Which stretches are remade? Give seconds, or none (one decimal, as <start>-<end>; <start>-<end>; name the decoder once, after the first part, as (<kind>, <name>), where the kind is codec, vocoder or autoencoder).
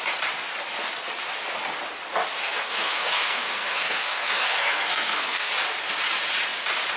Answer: 2.4-5.5 (codec, SNAC)